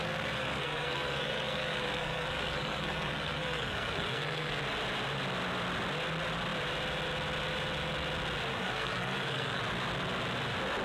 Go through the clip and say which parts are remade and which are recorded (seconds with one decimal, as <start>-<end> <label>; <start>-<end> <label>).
0.0-4.6 remade; 4.6-8.5 recorded; 8.5-9.6 remade; 9.6-10.8 recorded